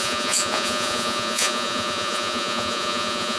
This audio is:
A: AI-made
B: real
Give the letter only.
A